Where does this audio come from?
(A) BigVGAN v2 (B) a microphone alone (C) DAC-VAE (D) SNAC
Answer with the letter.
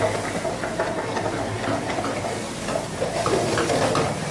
B